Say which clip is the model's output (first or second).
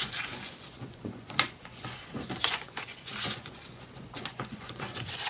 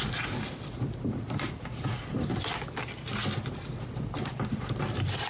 first